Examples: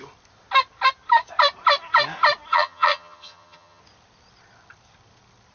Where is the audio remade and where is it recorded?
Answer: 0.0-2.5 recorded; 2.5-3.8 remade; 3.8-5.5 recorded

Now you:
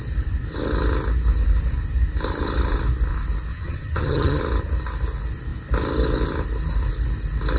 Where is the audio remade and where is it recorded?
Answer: 0.0-3.5 recorded; 3.5-4.4 remade; 4.4-7.6 recorded

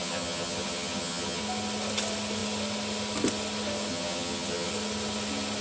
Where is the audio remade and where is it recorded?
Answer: 0.0-1.4 remade; 1.4-3.9 recorded; 3.9-4.7 remade; 4.7-5.6 recorded

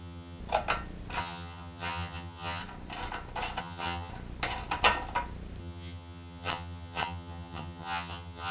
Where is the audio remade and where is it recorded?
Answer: 0.0-0.4 remade; 0.4-1.2 recorded; 1.2-2.6 remade; 2.6-3.6 recorded; 3.6-4.1 remade; 4.1-5.6 recorded; 5.6-8.5 remade